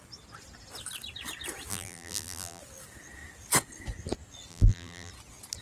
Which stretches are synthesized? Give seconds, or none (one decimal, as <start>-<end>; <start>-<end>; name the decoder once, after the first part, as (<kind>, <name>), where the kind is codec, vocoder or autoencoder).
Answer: 1.7-2.6 (vocoder, BigVGAN v2); 4.5-5.1